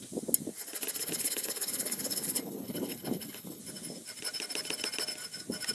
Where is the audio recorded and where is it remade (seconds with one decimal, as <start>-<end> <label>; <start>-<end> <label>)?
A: 0.0-1.0 recorded; 1.0-3.6 remade; 3.6-5.7 recorded